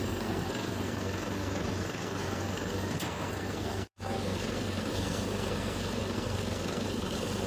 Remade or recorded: remade